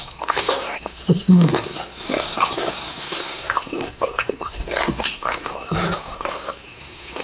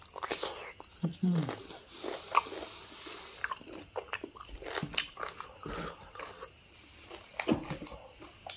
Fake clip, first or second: first